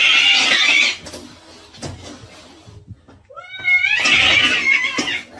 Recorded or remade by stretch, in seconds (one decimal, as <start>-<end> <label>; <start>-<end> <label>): 0.0-5.4 recorded